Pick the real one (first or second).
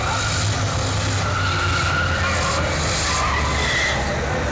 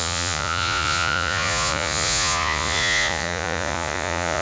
first